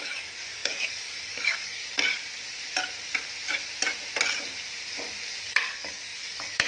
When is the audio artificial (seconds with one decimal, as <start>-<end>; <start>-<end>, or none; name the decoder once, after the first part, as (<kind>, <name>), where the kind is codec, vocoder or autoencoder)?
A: 0.0-1.8 (codec, DAC); 5.4-6.7